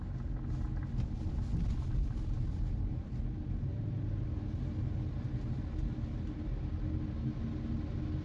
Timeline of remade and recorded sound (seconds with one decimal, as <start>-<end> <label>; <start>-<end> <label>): 0.0-8.2 recorded